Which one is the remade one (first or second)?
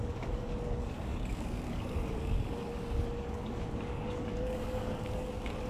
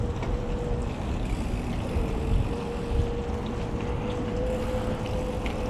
first